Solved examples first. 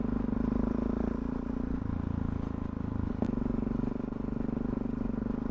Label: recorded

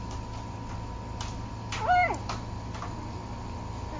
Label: recorded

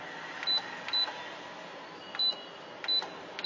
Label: recorded